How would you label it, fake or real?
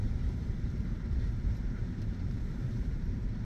fake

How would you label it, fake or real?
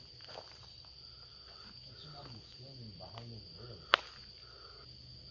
real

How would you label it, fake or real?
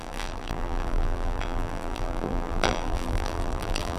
fake